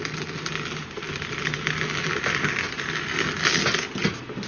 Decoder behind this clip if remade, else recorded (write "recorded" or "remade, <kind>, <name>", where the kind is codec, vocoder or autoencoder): recorded